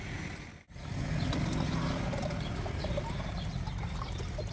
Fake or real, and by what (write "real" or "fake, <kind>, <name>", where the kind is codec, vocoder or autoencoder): real